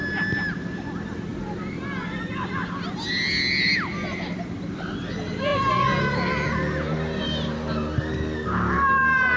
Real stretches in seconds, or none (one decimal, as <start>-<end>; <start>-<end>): 0.0-9.4